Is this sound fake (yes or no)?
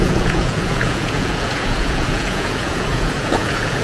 yes